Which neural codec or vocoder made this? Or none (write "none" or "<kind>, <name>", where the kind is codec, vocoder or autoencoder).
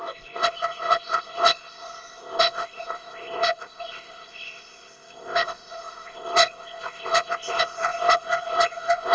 codec, ZipCodec